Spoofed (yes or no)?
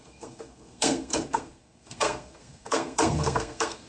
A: yes